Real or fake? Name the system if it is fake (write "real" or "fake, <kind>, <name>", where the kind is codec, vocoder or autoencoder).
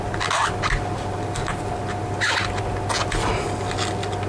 real